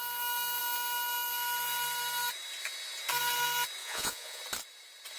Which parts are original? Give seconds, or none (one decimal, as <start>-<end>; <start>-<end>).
0.0-3.8; 4.4-5.2